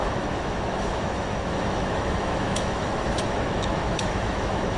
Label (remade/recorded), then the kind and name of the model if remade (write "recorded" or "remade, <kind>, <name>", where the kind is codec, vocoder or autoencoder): remade, autoencoder, DAC-VAE